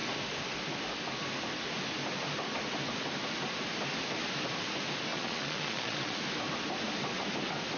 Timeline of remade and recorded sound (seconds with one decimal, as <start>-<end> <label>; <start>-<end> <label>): 0.0-5.1 recorded; 5.1-6.2 remade; 6.2-7.8 recorded